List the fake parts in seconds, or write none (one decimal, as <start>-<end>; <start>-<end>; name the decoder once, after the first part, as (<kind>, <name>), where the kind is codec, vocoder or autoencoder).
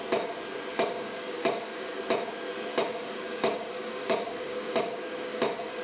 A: 0.7-2.0 (codec, DAC); 2.7-5.8